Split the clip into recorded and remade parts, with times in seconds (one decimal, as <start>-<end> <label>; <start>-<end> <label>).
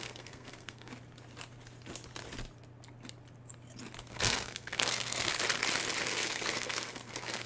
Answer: 0.0-0.9 remade; 0.9-4.0 recorded; 4.0-5.3 remade; 5.3-6.0 recorded; 6.0-7.5 remade